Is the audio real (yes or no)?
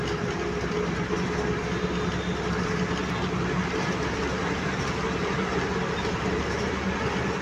yes